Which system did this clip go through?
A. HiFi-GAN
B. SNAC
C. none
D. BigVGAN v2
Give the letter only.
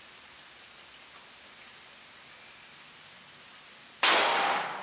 C